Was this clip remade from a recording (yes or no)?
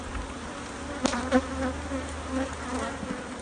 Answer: no